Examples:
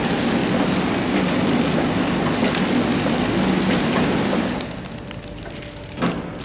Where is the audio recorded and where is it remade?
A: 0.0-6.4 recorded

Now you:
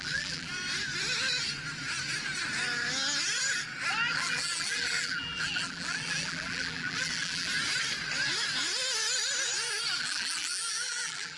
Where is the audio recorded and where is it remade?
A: 0.0-0.5 remade; 0.5-4.1 recorded; 4.1-7.5 remade; 7.5-10.0 recorded; 10.0-11.4 remade